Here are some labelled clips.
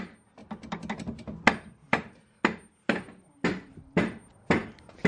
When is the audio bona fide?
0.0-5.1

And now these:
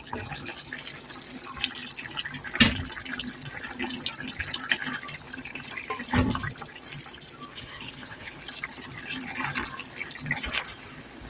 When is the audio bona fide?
0.0-7.5; 8.4-11.3

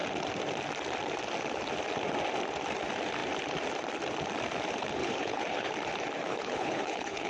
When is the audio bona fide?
0.0-5.0; 5.7-6.3

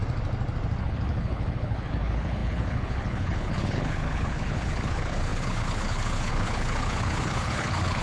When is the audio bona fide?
0.0-0.8

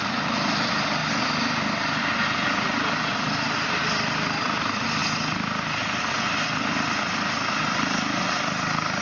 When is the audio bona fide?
0.0-9.0

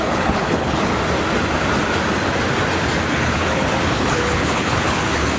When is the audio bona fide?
0.9-3.1